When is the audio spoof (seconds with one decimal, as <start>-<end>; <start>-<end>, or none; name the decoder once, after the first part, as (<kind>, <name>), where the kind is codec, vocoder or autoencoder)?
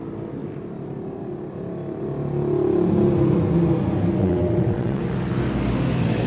4.2-5.0 (vocoder, WaveNeXt)